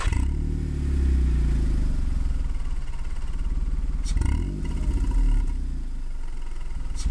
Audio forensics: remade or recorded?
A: recorded